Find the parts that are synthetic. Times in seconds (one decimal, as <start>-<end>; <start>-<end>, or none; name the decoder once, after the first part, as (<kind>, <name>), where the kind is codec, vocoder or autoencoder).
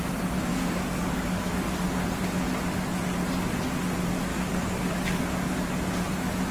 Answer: 0.5-1.7 (codec, DAC); 4.3-5.6